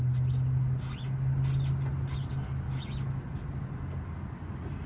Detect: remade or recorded recorded